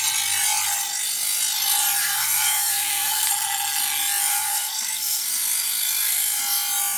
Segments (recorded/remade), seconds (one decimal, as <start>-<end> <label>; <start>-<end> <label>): 0.0-2.0 recorded; 2.0-3.3 remade; 3.3-4.3 recorded; 4.3-6.4 remade; 6.4-7.0 recorded